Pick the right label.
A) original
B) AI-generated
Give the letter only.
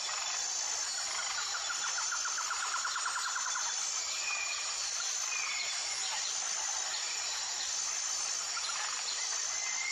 B